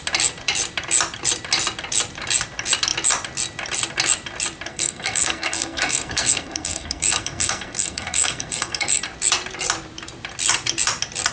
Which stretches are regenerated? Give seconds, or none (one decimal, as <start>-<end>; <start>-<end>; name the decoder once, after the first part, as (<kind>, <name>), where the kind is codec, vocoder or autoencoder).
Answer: 4.7-9.0 (codec, SNAC)